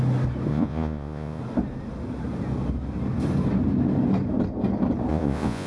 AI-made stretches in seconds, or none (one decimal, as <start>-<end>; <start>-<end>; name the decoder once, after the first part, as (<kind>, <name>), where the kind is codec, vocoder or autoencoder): 0.5-1.4 (vocoder, Vocos); 5.1-5.7